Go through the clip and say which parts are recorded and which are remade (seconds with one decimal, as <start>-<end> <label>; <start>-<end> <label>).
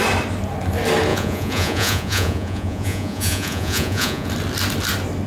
0.0-1.1 recorded; 1.1-4.3 remade; 4.3-5.3 recorded